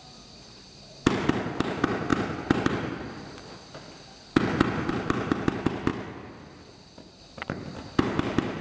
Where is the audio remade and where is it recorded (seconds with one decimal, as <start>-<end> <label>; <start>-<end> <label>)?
0.0-2.1 remade; 2.1-4.9 recorded; 4.9-5.9 remade; 5.9-7.2 recorded; 7.2-8.6 remade